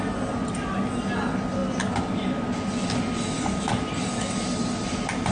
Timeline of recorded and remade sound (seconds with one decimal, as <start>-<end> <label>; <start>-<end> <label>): 0.0-5.3 recorded